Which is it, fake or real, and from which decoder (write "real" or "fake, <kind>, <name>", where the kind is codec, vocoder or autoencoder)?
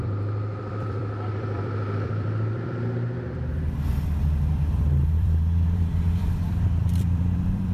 fake, vocoder, BigVGAN v2